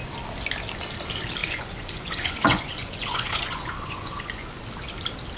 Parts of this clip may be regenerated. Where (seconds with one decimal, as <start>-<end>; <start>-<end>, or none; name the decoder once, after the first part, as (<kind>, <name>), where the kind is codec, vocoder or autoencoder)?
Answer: 1.4-4.6 (vocoder, Vocos)